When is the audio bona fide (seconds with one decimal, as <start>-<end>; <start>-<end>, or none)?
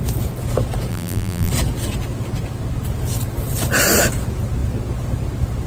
0.0-0.9; 1.5-5.7